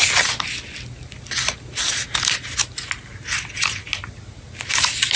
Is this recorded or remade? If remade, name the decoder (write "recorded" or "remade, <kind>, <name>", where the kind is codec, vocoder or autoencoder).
recorded